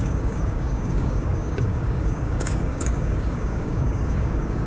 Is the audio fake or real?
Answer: fake